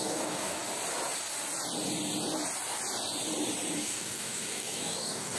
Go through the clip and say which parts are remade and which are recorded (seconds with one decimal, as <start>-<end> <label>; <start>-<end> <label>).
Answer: 0.0-0.6 remade; 0.6-3.8 recorded; 3.8-5.4 remade